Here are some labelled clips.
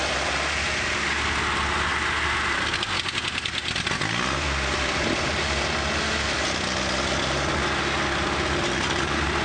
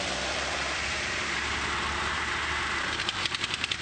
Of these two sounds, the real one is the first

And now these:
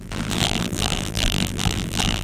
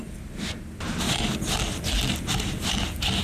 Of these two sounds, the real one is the second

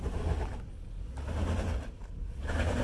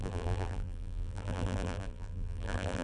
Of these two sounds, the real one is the first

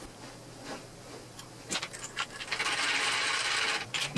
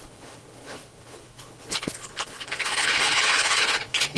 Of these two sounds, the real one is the first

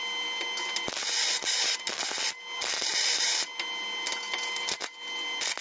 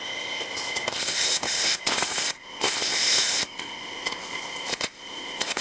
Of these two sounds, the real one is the first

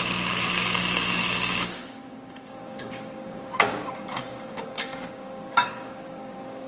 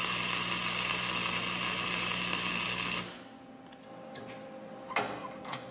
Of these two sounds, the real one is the second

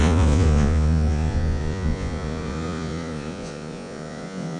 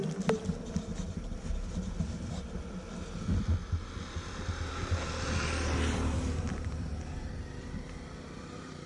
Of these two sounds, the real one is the second